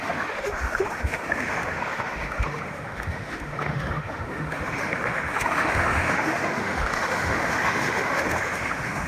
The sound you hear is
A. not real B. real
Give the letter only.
A